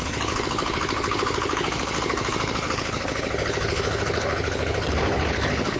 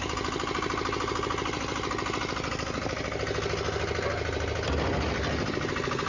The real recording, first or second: second